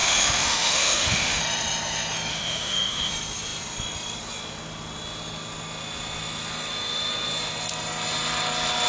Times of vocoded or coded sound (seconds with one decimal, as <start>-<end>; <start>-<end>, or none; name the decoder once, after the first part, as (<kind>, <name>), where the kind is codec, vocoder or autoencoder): 0.0-1.4 (autoencoder, DAC-VAE); 2.3-3.1